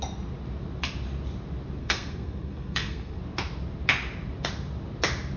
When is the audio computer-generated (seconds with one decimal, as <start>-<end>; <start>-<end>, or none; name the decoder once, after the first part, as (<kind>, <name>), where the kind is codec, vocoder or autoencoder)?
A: 1.8-3.2 (codec, SNAC)